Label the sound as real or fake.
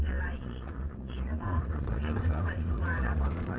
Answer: fake